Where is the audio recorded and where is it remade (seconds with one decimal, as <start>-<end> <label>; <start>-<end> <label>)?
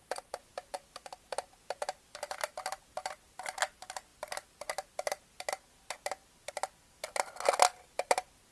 0.0-8.5 recorded